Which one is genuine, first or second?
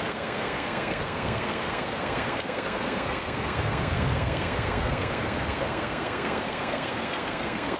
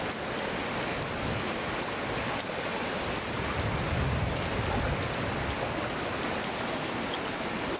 second